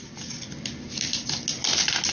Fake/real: real